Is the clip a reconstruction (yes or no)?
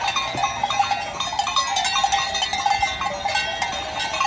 no